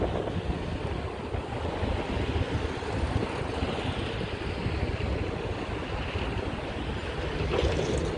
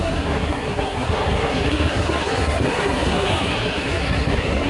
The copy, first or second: second